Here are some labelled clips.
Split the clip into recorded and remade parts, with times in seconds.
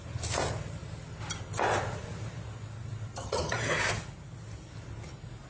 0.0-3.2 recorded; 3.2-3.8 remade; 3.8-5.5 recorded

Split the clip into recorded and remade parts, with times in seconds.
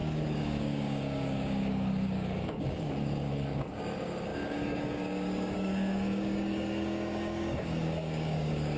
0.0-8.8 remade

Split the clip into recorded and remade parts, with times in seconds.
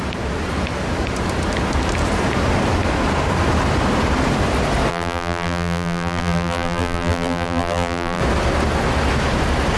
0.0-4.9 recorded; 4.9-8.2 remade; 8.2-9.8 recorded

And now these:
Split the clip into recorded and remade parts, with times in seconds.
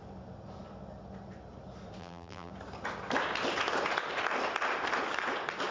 0.0-2.0 recorded; 2.0-2.5 remade; 2.5-5.7 recorded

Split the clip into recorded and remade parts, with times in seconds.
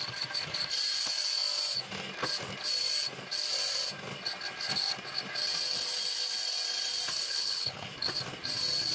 0.0-7.2 recorded; 7.2-7.9 remade; 7.9-8.9 recorded